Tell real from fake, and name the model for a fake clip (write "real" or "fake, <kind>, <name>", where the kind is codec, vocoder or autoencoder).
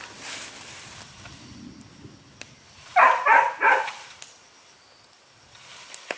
real